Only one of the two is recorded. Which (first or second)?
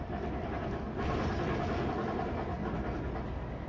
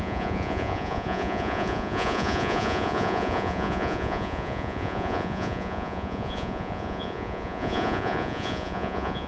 first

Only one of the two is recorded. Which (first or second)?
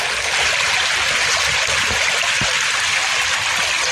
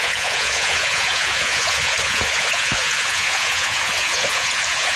first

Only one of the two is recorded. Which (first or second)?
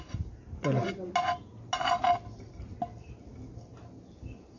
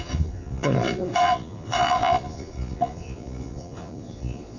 first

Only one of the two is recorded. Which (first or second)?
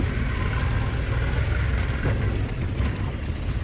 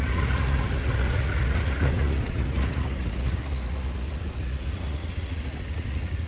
first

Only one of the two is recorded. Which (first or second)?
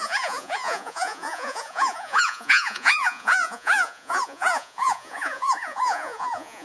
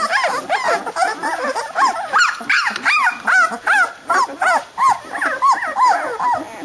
second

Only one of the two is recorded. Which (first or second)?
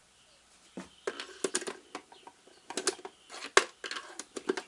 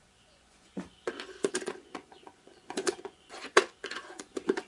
first